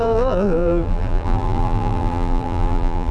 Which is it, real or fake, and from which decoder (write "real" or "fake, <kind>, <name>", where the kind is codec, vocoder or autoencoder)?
fake, vocoder, BigVGAN v2